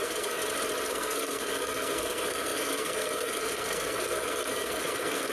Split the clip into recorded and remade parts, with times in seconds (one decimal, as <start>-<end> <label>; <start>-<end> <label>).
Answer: 0.0-0.4 remade; 0.4-0.9 recorded; 0.9-5.3 remade